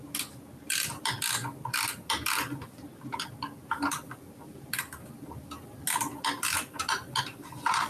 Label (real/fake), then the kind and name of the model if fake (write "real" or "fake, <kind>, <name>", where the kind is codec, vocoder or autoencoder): real